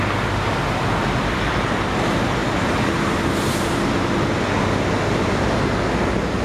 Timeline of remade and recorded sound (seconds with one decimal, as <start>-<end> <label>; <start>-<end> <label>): 0.0-6.4 recorded